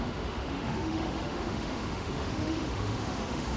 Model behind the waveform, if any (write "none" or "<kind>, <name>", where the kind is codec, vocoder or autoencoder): autoencoder, DAC-VAE